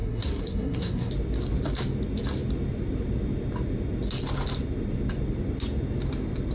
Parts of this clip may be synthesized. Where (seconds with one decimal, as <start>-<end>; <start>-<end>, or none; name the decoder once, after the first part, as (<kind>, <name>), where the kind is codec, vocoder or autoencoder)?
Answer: 0.0-1.1 (codec, SNAC)